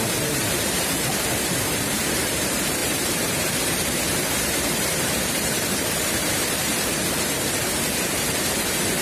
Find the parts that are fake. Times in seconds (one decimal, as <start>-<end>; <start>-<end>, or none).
0.0-9.0